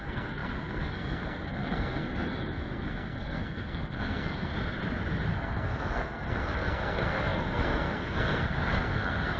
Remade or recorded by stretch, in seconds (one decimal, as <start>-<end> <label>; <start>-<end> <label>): 0.0-4.5 remade; 4.5-5.3 recorded; 5.3-9.4 remade